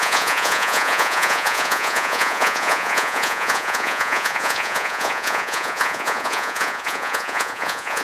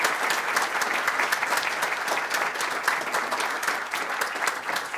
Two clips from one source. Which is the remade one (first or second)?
first